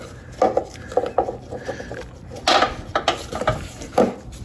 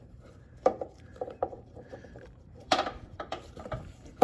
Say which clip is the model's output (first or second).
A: second